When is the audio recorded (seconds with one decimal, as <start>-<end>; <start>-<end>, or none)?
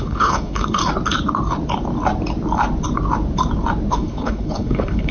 0.8-3.9